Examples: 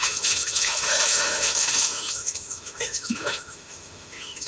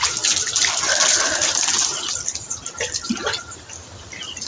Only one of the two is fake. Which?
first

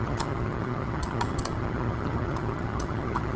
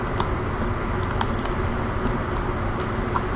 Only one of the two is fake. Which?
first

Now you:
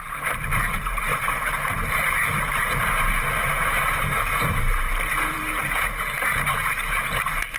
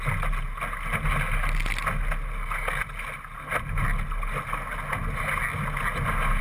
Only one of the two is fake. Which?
first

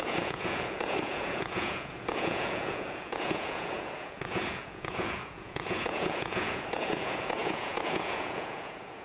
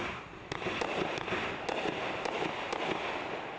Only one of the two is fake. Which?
first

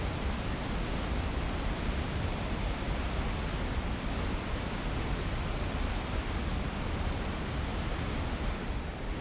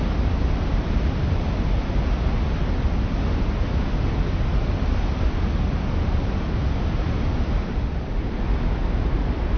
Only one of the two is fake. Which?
first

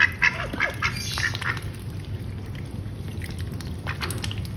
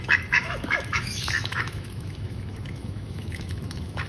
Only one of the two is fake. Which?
second